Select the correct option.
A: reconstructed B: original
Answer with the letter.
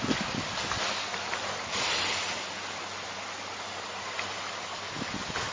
B